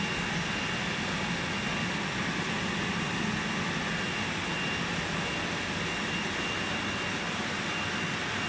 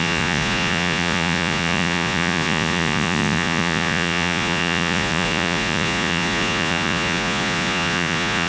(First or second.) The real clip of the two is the first